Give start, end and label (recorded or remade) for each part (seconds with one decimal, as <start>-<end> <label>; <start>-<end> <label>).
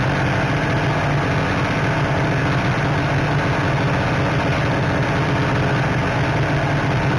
0.0-7.2 recorded